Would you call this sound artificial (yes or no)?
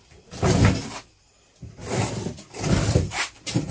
no